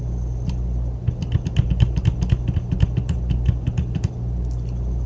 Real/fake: real